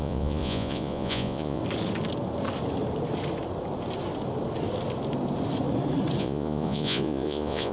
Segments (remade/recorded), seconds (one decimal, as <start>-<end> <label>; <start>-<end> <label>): 0.0-1.6 remade; 1.6-6.2 recorded; 6.2-7.7 remade